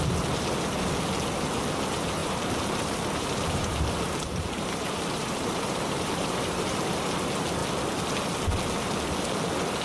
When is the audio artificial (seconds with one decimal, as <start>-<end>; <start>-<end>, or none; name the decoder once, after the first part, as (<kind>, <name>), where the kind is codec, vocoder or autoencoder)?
2.2-6.8 (vocoder, BigVGAN v2)